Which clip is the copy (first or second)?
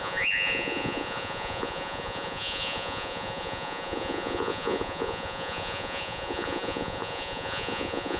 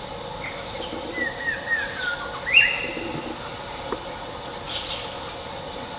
first